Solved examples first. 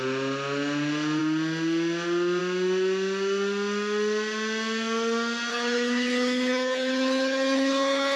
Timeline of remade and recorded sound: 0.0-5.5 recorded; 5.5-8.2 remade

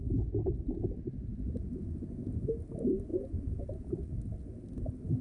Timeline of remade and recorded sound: 0.0-5.2 recorded

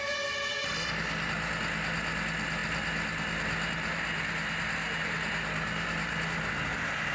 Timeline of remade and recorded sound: 0.0-7.1 recorded

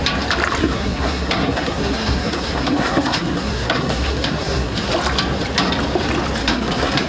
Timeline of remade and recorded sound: 0.0-0.6 recorded; 0.6-4.9 remade; 4.9-6.4 recorded; 6.4-7.1 remade